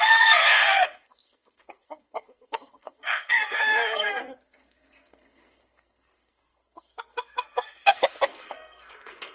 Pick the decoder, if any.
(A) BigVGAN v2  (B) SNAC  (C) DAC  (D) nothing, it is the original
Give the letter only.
B